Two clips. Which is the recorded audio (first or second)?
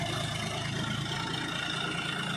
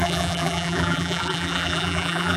first